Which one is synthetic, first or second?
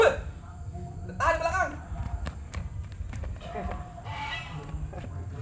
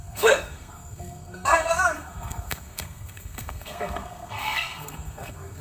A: second